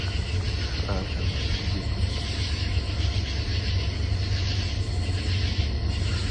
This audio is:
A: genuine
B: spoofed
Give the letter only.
A